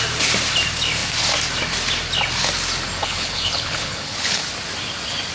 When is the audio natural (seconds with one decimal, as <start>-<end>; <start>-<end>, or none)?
0.0-3.0; 4.4-5.3